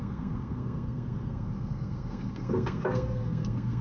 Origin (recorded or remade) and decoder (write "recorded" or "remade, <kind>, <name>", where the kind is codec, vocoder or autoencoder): remade, codec, SNAC